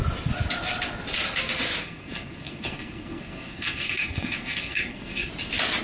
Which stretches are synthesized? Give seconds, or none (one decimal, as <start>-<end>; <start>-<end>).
1.8-5.3